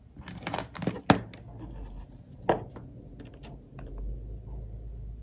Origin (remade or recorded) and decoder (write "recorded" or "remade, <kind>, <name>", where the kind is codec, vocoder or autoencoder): recorded